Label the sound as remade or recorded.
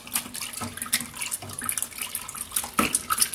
recorded